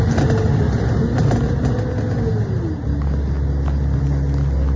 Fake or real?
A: real